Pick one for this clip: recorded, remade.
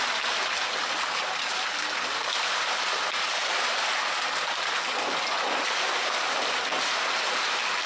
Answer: recorded